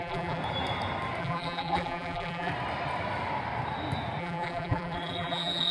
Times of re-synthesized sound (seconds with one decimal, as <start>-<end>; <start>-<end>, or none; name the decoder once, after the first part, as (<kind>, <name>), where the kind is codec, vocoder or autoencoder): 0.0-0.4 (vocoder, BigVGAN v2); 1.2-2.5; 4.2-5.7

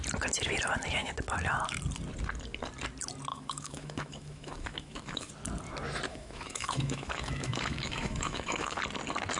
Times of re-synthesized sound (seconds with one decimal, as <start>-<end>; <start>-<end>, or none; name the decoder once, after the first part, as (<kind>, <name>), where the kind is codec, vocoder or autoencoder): 3.3-5.3 (autoencoder, DAC-VAE); 6.1-8.8

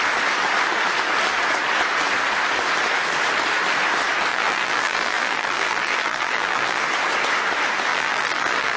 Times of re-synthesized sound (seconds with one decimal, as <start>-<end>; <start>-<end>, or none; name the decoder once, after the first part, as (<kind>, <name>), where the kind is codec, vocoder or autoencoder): 4.3-6.8 (vocoder, BigVGAN v2); 7.9-8.8

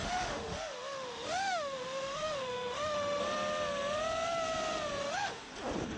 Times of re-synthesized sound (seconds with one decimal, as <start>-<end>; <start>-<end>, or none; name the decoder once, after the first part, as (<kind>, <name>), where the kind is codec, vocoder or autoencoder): 0.0-3.2 (autoencoder, DAC-VAE); 5.0-5.5

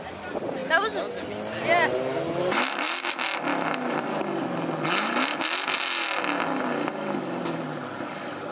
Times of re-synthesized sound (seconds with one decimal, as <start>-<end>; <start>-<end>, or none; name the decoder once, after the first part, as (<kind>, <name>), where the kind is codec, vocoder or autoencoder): none